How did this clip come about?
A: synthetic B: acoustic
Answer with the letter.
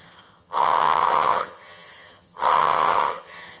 A